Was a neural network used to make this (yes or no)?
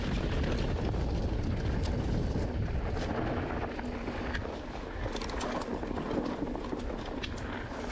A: no